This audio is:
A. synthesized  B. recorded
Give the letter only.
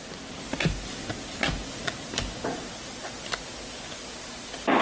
B